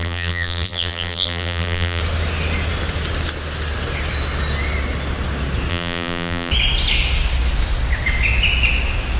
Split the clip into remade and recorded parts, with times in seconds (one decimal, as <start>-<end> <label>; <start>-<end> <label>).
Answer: 0.0-2.0 remade; 2.0-5.7 recorded; 5.7-6.5 remade; 6.5-9.2 recorded